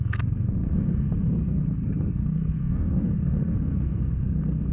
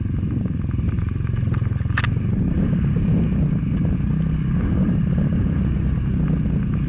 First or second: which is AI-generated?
first